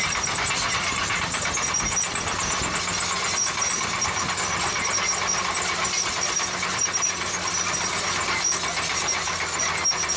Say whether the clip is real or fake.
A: real